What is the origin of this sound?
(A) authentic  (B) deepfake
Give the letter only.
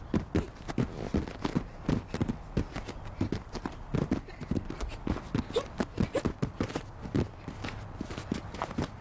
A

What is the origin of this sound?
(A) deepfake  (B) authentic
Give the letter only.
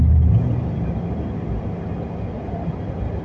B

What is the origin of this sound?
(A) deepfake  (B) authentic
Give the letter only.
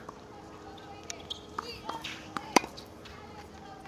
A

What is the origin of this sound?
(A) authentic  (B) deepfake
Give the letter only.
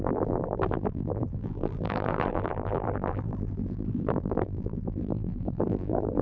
B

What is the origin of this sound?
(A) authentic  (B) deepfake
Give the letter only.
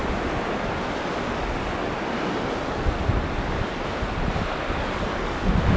A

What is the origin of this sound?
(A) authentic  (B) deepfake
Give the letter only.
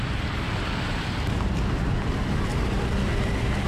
A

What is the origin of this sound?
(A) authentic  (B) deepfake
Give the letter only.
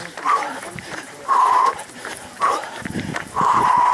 B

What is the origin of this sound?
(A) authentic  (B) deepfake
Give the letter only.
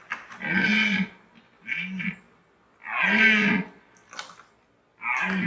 A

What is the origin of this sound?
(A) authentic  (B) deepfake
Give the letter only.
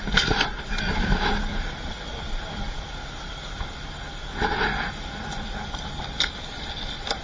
B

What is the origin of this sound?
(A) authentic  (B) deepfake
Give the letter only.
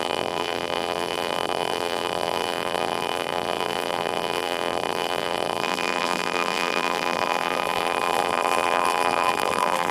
B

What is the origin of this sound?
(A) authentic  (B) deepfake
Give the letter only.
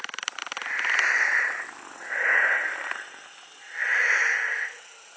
A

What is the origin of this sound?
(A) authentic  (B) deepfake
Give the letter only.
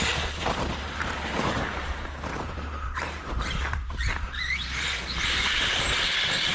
B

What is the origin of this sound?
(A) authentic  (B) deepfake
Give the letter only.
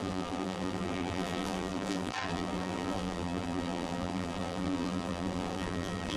B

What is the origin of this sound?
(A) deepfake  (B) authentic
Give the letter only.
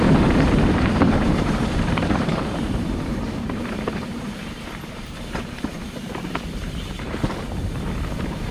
A